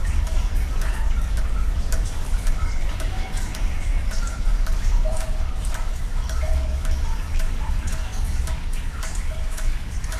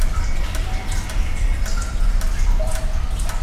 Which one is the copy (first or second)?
first